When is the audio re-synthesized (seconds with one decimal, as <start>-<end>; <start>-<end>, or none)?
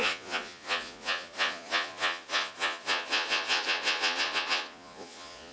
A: 0.0-5.5